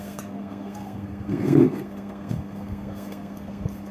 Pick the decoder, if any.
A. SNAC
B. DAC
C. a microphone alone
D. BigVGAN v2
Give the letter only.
A